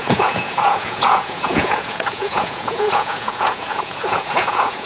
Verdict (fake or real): fake